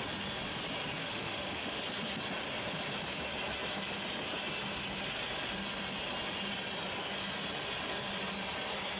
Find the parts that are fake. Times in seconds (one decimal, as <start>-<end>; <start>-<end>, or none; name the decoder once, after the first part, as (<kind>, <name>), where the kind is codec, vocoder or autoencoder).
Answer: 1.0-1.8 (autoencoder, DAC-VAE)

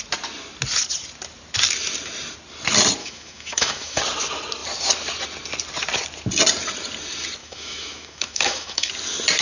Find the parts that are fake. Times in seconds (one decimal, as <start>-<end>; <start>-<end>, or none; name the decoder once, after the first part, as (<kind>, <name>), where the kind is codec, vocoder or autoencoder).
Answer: 3.0-4.0 (autoencoder, DAC-VAE); 7.4-8.9

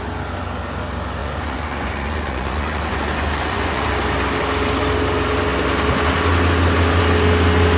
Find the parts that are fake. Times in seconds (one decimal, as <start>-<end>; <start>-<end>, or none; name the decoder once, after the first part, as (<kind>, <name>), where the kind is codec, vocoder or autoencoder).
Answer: 1.2-3.9 (vocoder, Vocos)

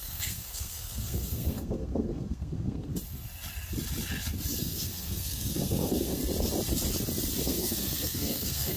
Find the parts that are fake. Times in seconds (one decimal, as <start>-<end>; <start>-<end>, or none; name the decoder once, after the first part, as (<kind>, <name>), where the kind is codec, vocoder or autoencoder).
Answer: 0.0-2.9 (codec, SNAC); 4.6-6.2; 7.4-8.8

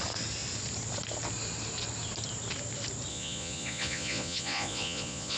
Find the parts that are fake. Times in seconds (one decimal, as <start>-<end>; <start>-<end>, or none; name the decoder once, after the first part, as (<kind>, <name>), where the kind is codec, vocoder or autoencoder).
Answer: 3.1-5.4 (vocoder, Vocos)